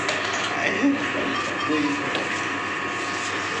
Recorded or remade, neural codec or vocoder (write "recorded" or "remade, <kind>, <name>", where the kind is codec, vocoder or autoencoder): recorded